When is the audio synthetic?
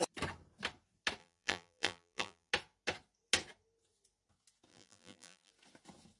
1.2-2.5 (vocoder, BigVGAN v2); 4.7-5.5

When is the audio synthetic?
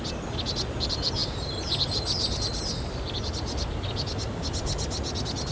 none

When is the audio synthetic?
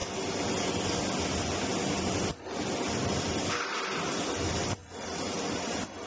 none